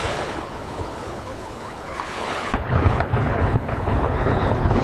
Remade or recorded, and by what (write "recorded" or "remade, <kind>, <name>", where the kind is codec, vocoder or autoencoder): remade, codec, HILCodec